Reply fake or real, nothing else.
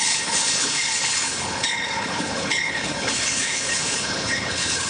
fake